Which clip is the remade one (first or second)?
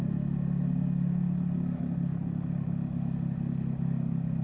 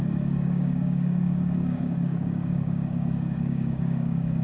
second